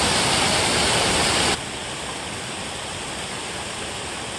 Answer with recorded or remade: recorded